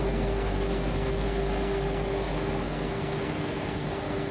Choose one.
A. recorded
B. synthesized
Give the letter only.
B